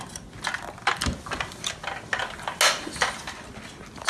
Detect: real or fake real